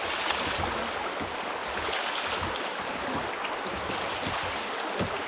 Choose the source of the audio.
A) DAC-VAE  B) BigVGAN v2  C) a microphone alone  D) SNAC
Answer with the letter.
C